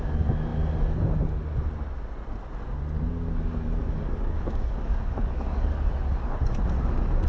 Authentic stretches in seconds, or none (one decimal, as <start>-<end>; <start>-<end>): 0.0-3.8; 5.9-7.3